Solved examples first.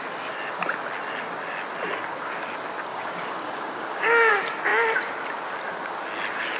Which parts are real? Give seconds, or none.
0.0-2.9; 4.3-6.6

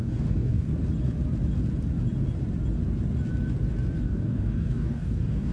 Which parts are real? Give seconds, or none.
0.7-4.0

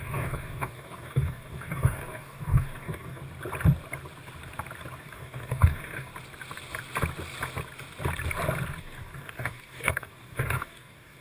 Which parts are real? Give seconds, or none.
3.2-5.0; 6.1-8.8

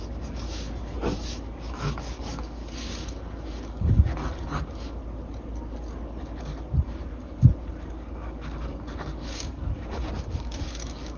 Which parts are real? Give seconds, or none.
2.6-3.6; 4.1-7.7